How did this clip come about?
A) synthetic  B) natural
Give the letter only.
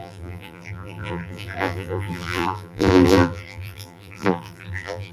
A